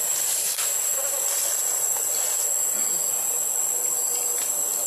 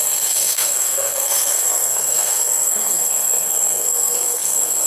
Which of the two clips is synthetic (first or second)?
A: second